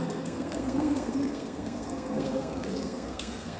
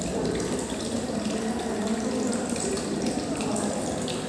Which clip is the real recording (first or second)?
second